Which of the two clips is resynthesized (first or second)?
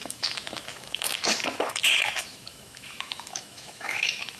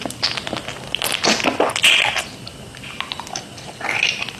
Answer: first